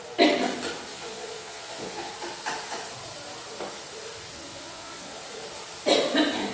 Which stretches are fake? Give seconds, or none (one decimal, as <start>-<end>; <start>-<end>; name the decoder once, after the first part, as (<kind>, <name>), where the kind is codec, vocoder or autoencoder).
0.9-2.1 (vocoder, Vocos); 4.5-5.2